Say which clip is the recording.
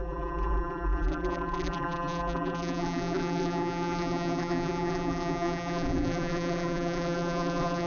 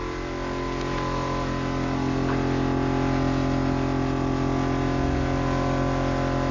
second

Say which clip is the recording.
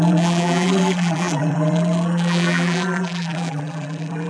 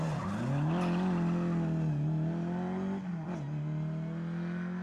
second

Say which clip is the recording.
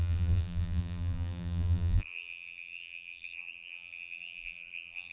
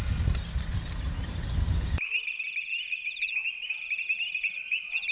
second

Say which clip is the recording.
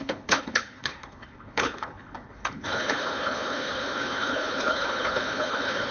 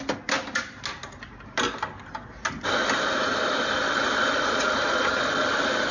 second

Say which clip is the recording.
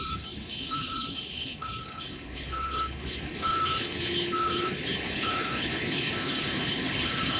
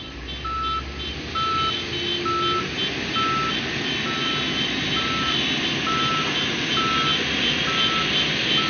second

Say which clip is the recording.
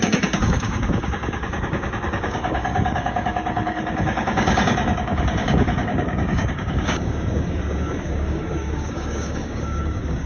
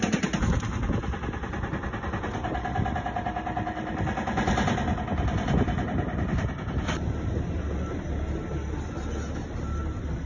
second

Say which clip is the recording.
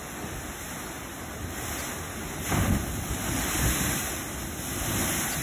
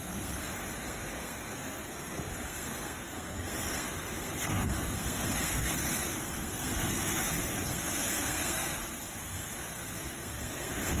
first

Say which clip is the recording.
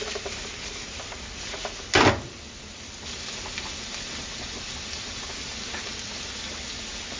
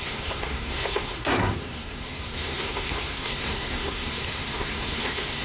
first